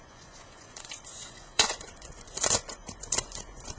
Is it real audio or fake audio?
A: fake